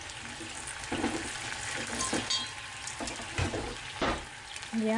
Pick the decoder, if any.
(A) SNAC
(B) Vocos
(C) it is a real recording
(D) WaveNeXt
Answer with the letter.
C